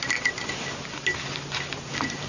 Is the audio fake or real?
real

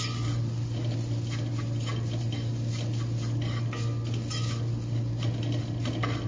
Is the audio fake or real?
real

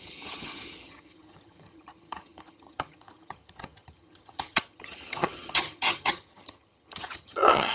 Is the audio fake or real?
fake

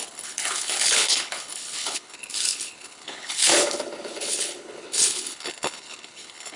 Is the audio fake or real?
fake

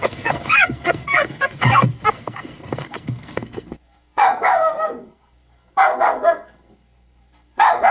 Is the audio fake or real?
fake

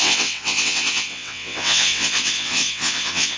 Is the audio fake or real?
fake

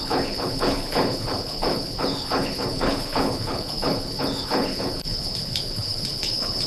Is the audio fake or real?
fake